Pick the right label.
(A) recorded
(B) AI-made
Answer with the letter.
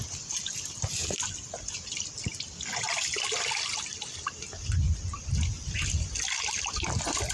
A